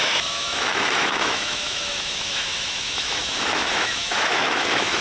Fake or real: fake